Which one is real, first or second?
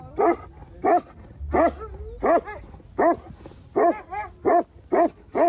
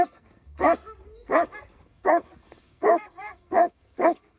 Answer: first